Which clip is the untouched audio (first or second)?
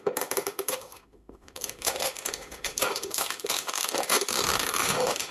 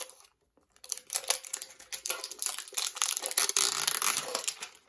second